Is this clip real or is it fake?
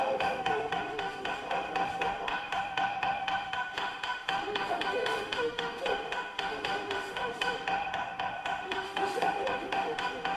fake